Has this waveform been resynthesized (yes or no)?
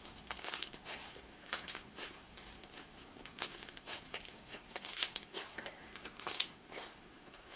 yes